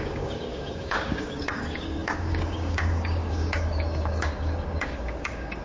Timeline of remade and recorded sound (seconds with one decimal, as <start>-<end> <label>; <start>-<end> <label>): 0.0-5.6 remade